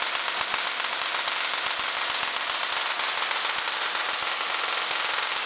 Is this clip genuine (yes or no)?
yes